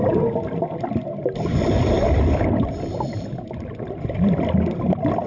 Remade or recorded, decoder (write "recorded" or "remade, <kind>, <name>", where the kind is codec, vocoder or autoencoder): recorded